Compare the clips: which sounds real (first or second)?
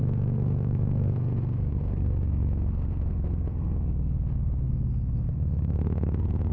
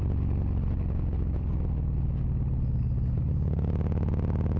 second